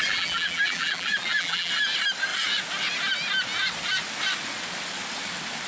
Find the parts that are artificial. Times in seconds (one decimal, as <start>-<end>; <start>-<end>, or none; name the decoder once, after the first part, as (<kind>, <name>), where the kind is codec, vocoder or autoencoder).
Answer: 0.0-1.7 (vocoder, BigVGAN v2)